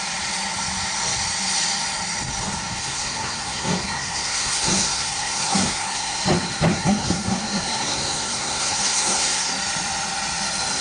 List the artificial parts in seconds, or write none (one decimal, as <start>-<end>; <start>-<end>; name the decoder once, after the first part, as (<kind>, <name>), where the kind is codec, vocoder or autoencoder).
2.8-6.2 (codec, SNAC); 6.7-9.5